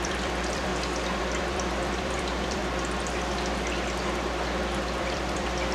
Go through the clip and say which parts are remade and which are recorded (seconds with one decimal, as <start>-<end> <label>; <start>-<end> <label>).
0.0-0.7 remade; 0.7-1.2 recorded; 1.2-2.6 remade; 2.6-5.0 recorded; 5.0-5.7 remade